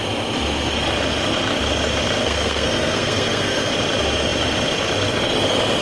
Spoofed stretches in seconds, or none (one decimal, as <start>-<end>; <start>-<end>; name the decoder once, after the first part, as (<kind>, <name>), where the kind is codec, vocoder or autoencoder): 2.2-3.7 (codec, SNAC)